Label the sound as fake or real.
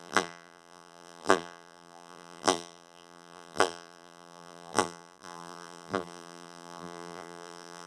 fake